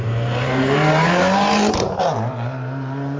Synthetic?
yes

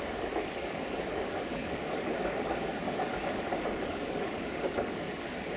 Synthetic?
yes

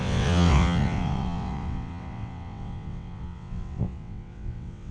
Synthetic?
yes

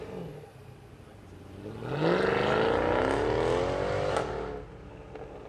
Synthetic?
no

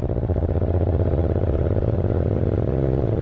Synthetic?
yes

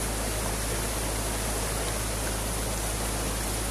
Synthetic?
no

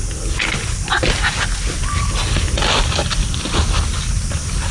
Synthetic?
no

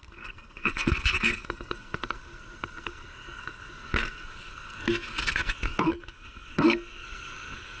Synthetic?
yes